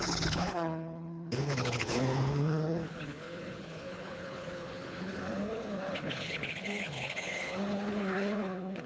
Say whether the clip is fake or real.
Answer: fake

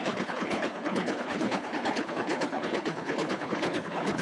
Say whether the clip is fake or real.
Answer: fake